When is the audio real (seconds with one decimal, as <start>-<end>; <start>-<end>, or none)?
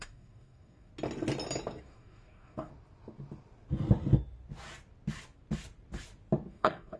0.9-1.8; 2.7-6.5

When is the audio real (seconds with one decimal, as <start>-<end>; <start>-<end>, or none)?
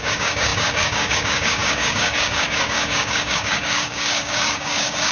none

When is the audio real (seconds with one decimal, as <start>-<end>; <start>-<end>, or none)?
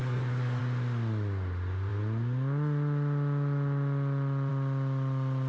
0.6-5.5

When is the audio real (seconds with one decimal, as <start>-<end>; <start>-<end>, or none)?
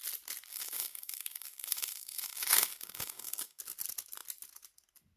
0.0-0.5; 3.6-5.2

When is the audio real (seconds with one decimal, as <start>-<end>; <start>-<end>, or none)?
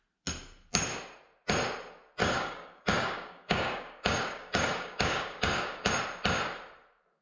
0.0-2.2; 5.9-7.2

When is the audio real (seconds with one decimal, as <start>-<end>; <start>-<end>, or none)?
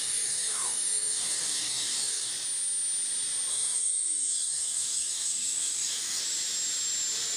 2.3-3.5; 6.2-7.4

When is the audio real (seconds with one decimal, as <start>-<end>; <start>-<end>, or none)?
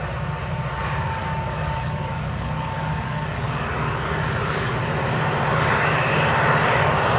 0.0-1.2; 4.8-5.5; 6.2-7.2